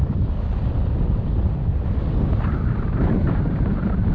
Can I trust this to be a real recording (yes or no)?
yes